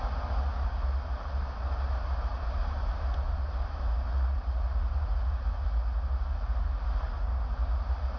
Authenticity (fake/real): real